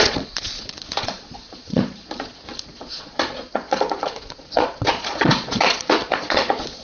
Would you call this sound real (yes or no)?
no